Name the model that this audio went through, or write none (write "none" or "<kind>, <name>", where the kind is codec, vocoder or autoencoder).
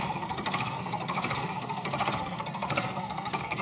codec, SNAC